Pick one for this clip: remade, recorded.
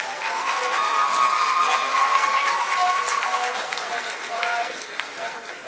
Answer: remade